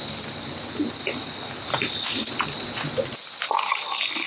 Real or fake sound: real